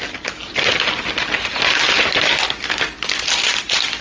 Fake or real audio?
real